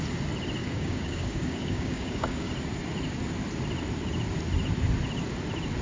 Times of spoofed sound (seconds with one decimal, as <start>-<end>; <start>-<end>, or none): 0.6-2.5

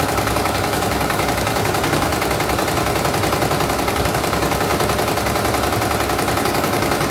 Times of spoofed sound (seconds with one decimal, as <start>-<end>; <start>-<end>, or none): 0.0-2.1; 3.9-4.7; 6.4-7.1

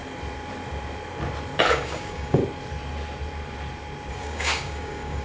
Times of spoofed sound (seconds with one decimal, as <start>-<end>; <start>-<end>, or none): 1.7-2.4; 4.1-5.2

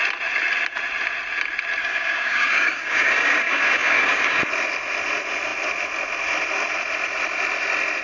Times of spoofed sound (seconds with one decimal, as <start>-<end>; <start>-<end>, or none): 1.8-4.4

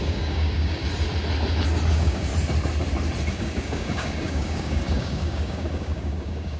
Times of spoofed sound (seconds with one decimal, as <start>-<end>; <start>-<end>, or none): 0.0-0.8; 1.9-2.3; 3.3-6.6

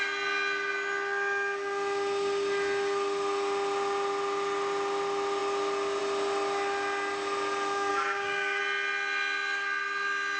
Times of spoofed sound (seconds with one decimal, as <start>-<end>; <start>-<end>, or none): 7.9-8.6

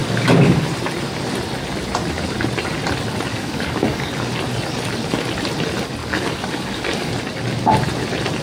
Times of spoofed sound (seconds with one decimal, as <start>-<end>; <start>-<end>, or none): 0.0-0.6; 3.3-4.1; 6.0-7.1